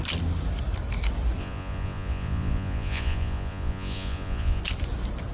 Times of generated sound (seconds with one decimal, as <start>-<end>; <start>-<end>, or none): 1.4-4.6

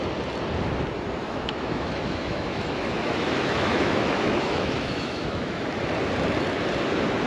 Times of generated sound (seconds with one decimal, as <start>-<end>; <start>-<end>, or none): 1.2-5.6

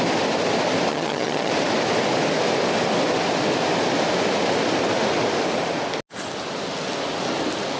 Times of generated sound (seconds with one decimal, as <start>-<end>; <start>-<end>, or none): 0.9-1.5

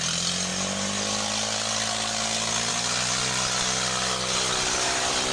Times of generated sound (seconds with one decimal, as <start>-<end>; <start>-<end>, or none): none

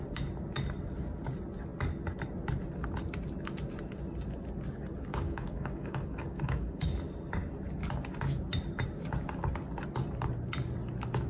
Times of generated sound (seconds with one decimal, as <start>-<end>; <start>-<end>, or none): 5.1-6.9